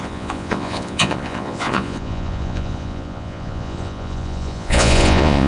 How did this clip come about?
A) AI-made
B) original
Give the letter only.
A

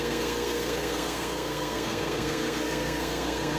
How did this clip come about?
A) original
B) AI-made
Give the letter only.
B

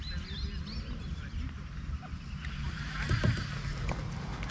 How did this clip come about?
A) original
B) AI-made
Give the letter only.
A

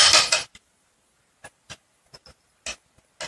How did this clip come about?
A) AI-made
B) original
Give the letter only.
B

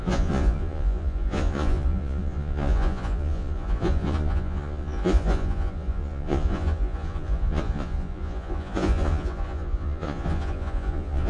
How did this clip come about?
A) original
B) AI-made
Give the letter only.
B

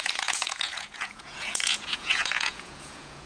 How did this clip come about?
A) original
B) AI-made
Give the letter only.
B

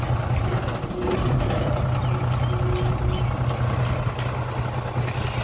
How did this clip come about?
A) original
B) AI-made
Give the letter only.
A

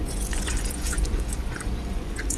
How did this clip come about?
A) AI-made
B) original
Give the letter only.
A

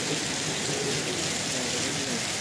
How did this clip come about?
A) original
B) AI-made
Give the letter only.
A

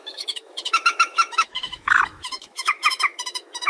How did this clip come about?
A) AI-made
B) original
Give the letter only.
A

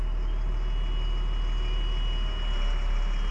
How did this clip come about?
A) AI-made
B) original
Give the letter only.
B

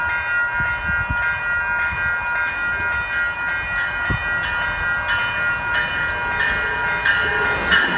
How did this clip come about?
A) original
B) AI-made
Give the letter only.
A